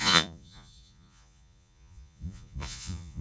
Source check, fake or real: fake